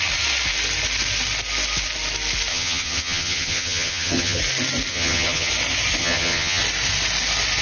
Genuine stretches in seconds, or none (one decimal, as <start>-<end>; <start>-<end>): 0.0-2.5; 4.4-4.9; 5.5-6.0; 6.6-7.6